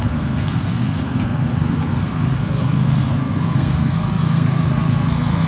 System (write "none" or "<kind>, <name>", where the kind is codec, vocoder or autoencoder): codec, SNAC